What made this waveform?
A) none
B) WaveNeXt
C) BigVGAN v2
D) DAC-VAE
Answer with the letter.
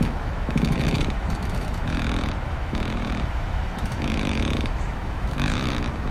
D